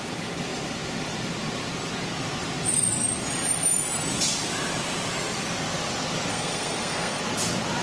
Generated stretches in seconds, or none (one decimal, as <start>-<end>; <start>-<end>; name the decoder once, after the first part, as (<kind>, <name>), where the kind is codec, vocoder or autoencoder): 6.3-7.2 (codec, SNAC)